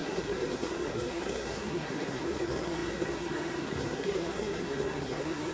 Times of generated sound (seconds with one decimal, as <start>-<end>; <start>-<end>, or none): 0.0-5.5